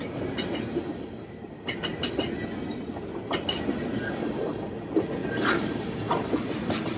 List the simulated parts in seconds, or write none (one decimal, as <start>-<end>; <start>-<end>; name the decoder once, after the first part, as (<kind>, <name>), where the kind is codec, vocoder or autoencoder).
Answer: 5.2-7.0 (vocoder, BigVGAN v2)